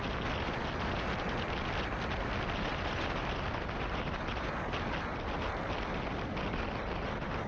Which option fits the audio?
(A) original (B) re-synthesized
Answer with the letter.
A